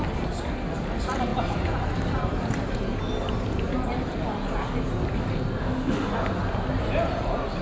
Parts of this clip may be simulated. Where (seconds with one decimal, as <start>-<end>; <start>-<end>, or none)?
5.6-6.1